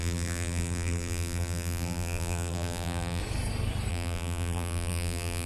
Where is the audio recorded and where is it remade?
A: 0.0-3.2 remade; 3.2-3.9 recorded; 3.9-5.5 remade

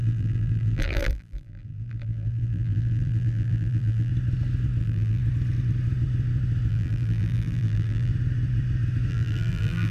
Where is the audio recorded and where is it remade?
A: 0.0-4.1 remade; 4.1-4.8 recorded; 4.8-5.2 remade; 5.2-6.7 recorded; 6.7-8.1 remade; 8.1-9.1 recorded; 9.1-9.9 remade